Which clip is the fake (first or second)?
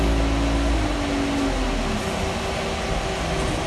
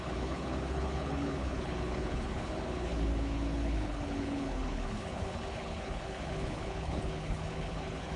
second